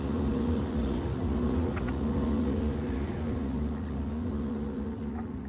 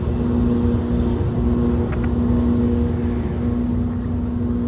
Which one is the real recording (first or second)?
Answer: second